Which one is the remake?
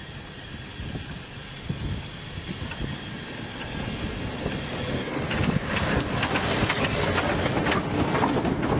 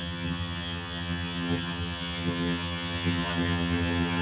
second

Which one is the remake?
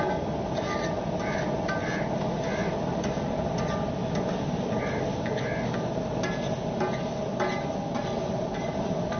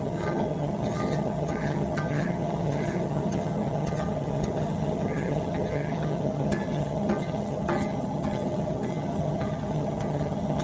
second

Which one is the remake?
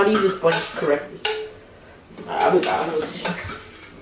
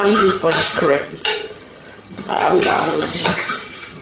second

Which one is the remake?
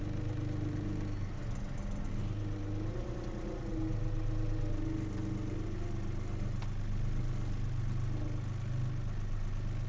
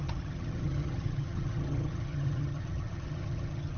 second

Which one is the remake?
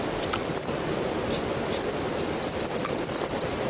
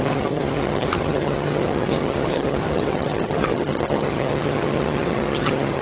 second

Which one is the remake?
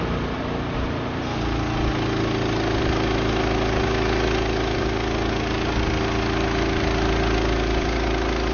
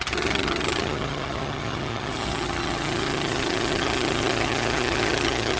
second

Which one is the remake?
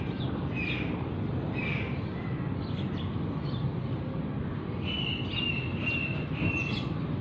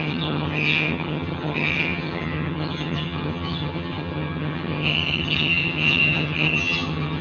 second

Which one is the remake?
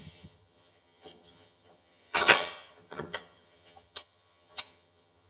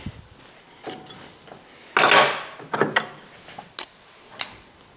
first